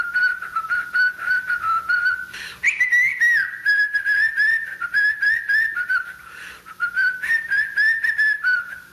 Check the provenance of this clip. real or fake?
real